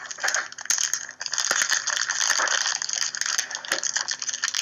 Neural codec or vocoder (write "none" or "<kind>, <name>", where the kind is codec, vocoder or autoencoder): none